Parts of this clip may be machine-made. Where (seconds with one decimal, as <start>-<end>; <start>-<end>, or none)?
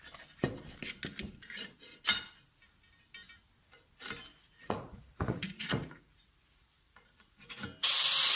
4.3-7.6